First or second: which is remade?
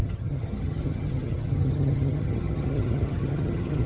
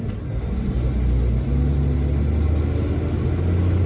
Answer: first